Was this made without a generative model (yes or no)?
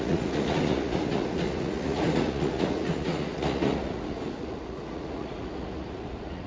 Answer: no